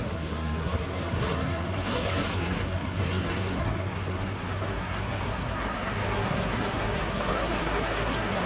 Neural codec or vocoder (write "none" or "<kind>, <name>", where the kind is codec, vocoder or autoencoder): codec, SNAC